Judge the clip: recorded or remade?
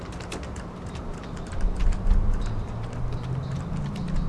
recorded